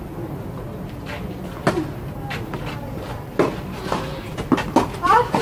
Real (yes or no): yes